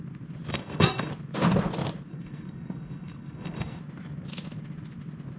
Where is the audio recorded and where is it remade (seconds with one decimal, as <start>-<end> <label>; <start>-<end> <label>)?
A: 0.0-0.5 recorded; 0.5-1.1 remade; 1.1-2.1 recorded; 2.1-3.8 remade; 3.8-5.4 recorded